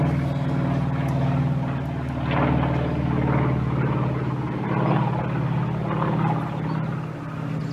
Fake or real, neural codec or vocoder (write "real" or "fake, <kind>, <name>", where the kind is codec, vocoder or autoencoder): real